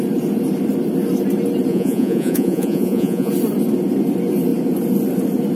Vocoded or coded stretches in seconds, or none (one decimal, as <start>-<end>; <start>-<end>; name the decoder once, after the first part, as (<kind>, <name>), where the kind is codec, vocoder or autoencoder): 1.7-3.3 (vocoder, Vocos)